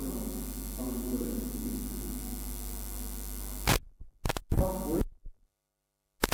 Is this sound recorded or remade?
recorded